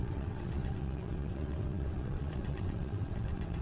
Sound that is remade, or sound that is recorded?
remade